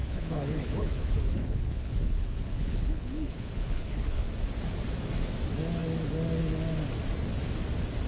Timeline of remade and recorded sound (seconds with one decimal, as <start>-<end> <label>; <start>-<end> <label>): 0.0-4.2 remade; 4.2-8.1 recorded